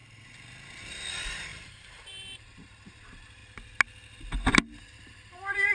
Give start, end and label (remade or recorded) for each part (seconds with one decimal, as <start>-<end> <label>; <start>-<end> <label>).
0.0-1.1 recorded; 1.1-3.4 remade; 3.4-4.9 recorded; 4.9-5.7 remade